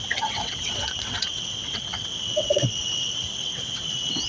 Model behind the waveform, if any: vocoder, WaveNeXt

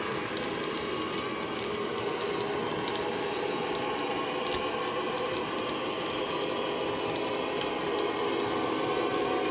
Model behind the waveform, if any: none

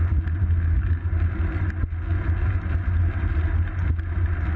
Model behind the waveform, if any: none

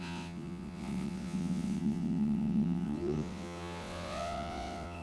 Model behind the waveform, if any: vocoder, WaveNeXt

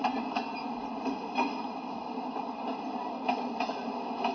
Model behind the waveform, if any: none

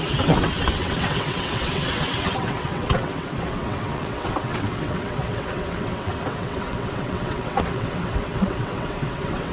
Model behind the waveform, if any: vocoder, WaveNeXt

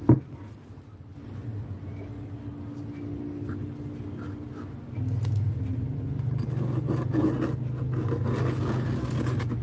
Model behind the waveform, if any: none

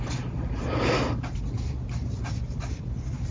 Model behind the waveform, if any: none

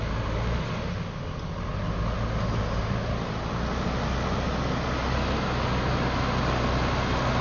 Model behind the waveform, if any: none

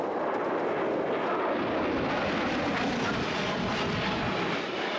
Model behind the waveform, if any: none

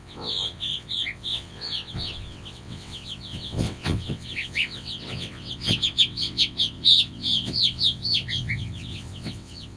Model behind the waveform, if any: vocoder, WaveNeXt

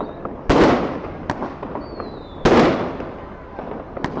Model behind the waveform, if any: none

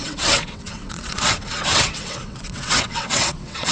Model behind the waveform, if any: vocoder, WaveNeXt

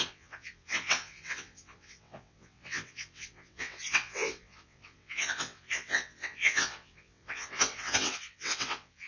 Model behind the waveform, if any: vocoder, WaveNeXt